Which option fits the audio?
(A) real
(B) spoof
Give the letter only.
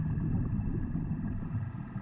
A